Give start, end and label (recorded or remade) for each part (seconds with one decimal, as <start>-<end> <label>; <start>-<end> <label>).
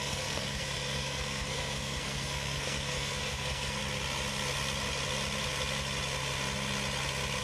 0.0-3.8 remade; 3.8-7.4 recorded